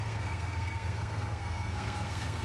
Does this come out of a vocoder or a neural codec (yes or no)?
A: yes